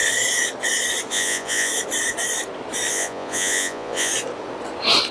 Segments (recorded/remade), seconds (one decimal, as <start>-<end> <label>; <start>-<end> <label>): 0.0-1.1 recorded; 1.1-1.7 remade; 1.7-2.9 recorded; 2.9-4.1 remade; 4.1-5.1 recorded